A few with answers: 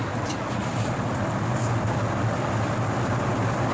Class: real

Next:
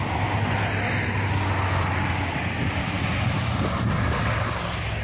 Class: real